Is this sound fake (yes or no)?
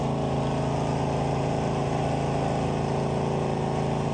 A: no